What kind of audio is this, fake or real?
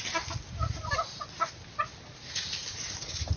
real